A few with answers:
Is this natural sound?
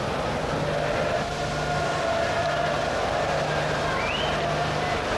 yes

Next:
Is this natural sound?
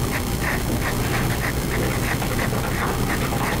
yes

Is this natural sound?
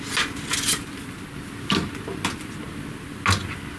yes